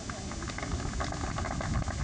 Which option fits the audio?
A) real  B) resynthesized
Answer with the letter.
A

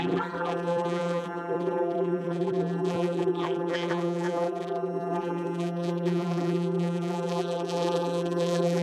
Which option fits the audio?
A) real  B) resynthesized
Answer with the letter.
B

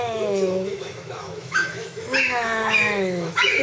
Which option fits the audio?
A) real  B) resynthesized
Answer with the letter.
B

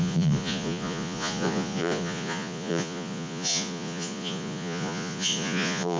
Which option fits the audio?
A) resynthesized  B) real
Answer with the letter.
A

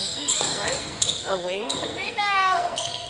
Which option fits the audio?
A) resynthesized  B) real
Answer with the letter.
A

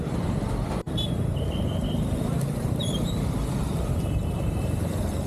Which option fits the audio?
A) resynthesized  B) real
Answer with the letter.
A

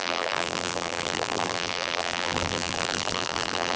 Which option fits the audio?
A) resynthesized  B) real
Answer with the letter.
A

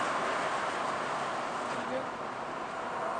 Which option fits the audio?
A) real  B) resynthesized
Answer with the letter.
A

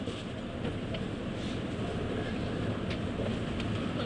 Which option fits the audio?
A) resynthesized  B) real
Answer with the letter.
B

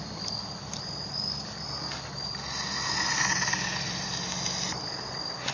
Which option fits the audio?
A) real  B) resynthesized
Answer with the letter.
A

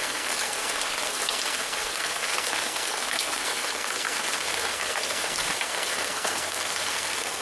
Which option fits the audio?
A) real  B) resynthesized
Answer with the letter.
B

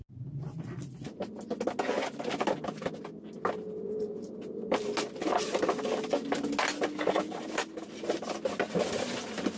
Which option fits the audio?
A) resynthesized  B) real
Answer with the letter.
B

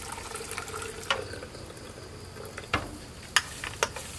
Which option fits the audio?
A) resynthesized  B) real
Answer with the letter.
B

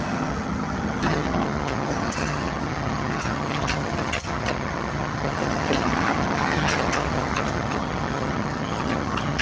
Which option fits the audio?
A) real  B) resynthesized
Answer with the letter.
B